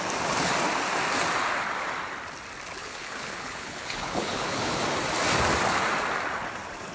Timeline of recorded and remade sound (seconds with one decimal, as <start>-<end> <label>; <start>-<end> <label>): 0.0-2.8 recorded; 2.8-4.8 remade; 4.8-6.9 recorded